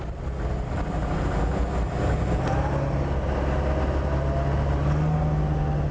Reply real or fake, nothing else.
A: real